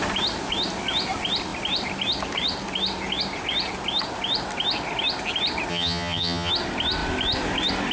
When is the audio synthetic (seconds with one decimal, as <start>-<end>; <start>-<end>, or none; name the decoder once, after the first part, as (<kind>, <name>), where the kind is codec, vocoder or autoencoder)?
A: 5.7-6.5 (vocoder, HiFi-GAN)